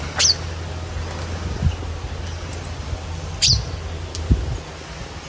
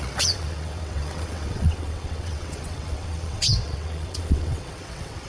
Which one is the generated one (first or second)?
second